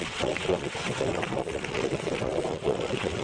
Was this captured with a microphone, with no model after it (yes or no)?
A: no